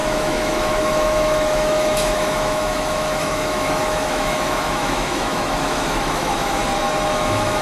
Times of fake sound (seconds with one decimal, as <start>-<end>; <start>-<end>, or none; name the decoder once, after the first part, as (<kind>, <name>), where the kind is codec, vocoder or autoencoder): 0.0-6.6 (autoencoder, DAC-VAE); 7.1-7.6